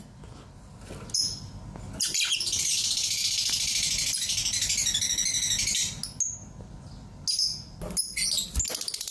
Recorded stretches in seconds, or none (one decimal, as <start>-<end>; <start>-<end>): 0.0-9.1